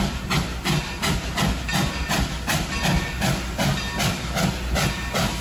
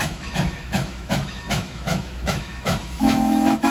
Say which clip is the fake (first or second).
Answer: second